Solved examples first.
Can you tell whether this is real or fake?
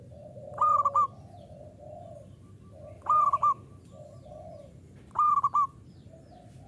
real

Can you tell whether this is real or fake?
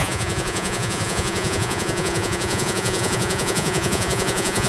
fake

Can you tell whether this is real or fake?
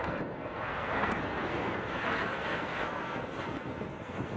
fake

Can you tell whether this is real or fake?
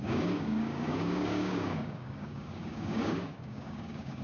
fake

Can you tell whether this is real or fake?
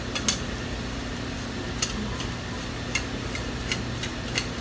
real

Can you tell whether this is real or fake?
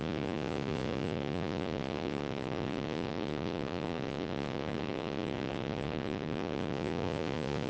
fake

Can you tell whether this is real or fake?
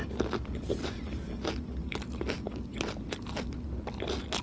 real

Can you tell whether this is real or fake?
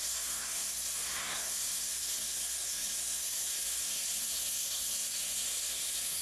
fake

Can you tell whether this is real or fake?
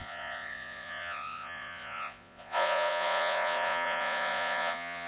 fake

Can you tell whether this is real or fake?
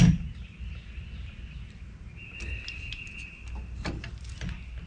real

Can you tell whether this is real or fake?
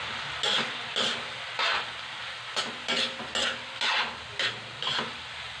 real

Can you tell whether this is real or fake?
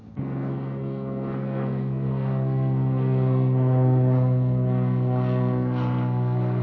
fake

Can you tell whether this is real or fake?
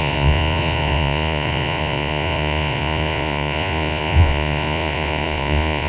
fake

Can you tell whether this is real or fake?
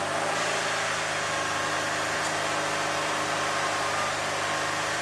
real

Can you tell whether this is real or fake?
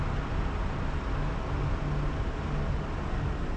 real